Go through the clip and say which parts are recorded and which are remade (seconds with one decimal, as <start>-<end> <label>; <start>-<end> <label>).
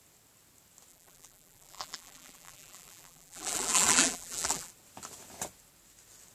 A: 0.0-0.9 recorded; 0.9-4.7 remade; 4.7-6.3 recorded